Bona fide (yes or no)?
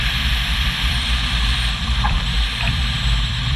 no